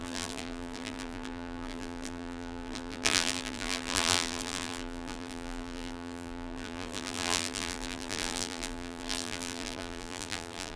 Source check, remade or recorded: remade